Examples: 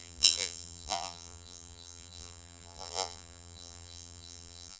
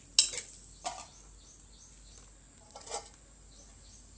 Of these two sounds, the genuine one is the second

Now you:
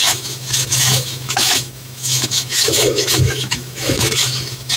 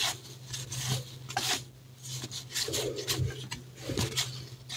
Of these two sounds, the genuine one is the second